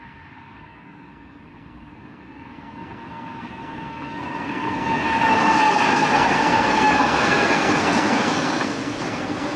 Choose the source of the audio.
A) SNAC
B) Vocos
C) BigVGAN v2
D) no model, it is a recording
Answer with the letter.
A